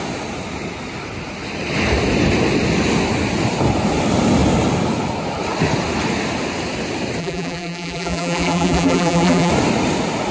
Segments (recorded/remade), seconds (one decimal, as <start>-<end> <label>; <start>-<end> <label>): 0.0-7.2 recorded; 7.2-9.5 remade; 9.5-10.3 recorded